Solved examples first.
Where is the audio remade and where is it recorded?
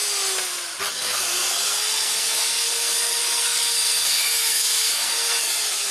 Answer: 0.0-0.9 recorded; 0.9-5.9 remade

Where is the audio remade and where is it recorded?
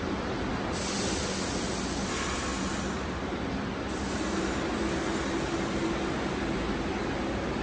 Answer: 0.0-7.6 recorded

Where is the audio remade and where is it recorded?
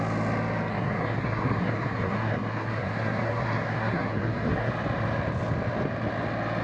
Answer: 0.0-0.7 recorded; 0.7-4.7 remade; 4.7-6.6 recorded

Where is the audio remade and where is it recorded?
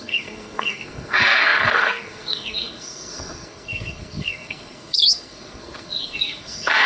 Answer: 0.0-6.9 remade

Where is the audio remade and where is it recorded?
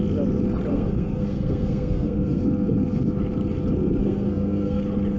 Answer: 0.0-0.7 recorded; 0.7-2.4 remade; 2.4-4.0 recorded; 4.0-4.8 remade; 4.8-5.2 recorded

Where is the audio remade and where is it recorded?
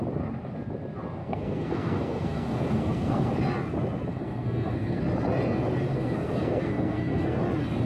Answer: 0.0-1.2 recorded; 1.2-3.3 remade; 3.3-4.1 recorded; 4.1-5.0 remade; 5.0-5.9 recorded; 5.9-7.4 remade; 7.4-7.9 recorded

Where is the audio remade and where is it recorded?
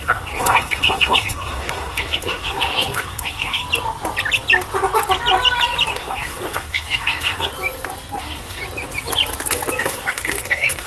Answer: 0.0-3.6 remade; 3.6-5.9 recorded; 5.9-7.5 remade; 7.5-8.2 recorded; 8.2-8.6 remade; 8.6-9.8 recorded; 9.8-10.9 remade